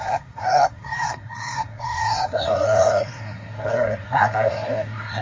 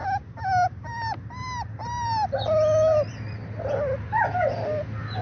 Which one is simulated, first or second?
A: first